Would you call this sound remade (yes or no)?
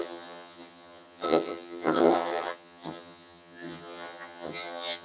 yes